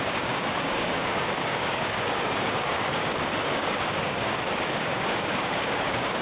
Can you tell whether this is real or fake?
fake